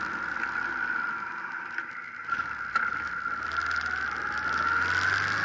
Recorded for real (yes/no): yes